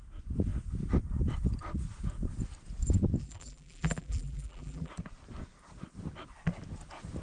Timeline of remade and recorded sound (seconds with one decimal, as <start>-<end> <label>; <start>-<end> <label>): 0.0-3.2 recorded; 3.2-4.9 remade; 4.9-7.2 recorded

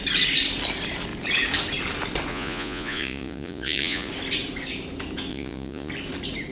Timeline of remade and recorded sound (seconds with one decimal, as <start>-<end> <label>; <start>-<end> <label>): 0.0-2.3 recorded; 2.3-4.1 remade; 4.1-5.3 recorded; 5.3-5.9 remade; 5.9-6.5 recorded

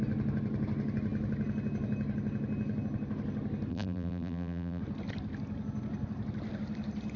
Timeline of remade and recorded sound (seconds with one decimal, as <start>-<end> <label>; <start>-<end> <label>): 0.0-3.7 recorded; 3.7-4.8 remade; 4.8-7.2 recorded